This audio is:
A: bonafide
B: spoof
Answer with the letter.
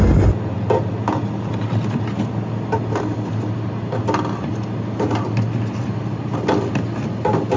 A